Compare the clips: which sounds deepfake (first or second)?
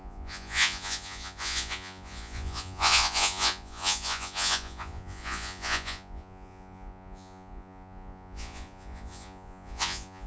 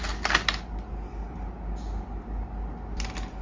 first